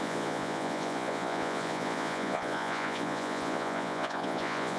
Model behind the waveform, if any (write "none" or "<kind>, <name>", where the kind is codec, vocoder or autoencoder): vocoder, Vocos